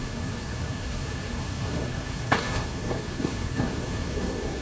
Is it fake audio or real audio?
fake